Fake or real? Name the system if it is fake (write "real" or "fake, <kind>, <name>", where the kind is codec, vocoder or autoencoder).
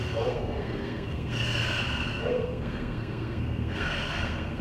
fake, codec, SNAC